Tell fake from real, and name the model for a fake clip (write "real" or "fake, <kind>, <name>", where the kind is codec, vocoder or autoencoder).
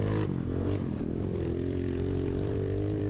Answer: fake, vocoder, BigVGAN v2